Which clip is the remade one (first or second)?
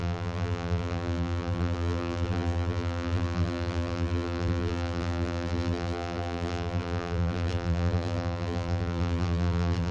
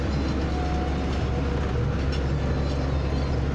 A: first